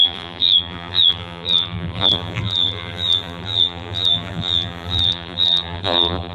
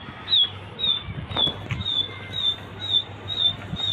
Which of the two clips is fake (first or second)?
first